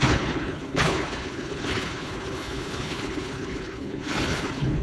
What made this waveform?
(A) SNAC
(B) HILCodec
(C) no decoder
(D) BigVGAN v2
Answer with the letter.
B